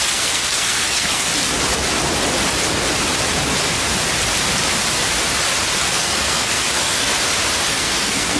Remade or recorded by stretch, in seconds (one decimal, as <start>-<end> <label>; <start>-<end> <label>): 0.0-1.3 remade; 1.3-5.8 recorded; 5.8-7.1 remade; 7.1-7.7 recorded; 7.7-8.4 remade